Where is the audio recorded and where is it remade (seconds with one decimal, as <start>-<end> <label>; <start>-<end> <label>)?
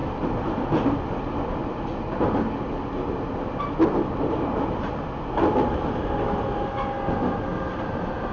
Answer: 0.0-8.3 recorded